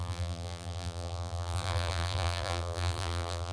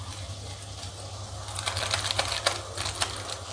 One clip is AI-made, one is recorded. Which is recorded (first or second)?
second